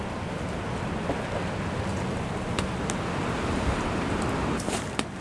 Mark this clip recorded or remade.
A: recorded